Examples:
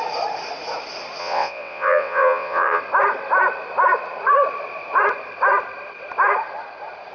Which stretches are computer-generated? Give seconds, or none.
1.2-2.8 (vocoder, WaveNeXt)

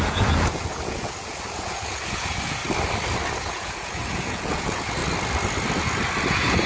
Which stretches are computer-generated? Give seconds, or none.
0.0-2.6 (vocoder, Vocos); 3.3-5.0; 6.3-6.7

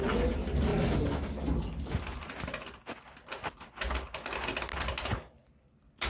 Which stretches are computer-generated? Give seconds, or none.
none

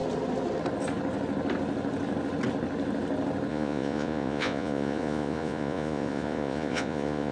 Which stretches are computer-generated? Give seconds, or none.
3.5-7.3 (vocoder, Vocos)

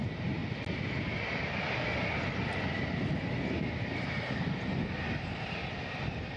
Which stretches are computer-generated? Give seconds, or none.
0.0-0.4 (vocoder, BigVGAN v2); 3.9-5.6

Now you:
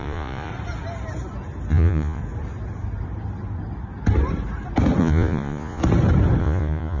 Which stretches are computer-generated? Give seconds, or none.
0.0-0.5 (vocoder, Vocos); 1.7-2.2; 5.0-5.8; 6.4-7.0